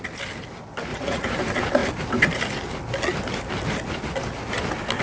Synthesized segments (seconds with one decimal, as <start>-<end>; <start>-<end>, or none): 0.9-1.4